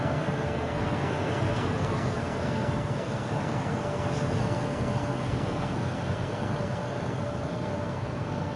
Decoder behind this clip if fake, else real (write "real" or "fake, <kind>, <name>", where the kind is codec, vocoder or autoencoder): fake, codec, SNAC